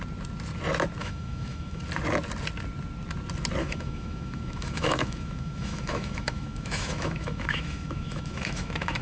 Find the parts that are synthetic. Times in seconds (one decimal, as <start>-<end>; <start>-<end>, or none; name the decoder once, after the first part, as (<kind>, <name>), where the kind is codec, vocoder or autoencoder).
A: 1.0-1.8 (autoencoder, DAC-VAE); 3.6-9.0

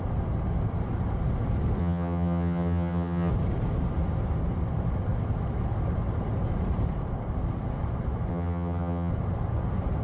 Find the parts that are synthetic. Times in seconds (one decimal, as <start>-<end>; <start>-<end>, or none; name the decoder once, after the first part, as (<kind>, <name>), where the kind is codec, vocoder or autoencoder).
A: 1.8-3.3 (vocoder, HiFi-GAN); 8.3-9.1

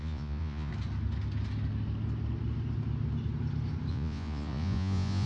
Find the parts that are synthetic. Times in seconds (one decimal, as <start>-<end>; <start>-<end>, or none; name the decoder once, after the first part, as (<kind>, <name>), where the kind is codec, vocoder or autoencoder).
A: 0.0-0.7 (vocoder, Vocos); 3.9-5.3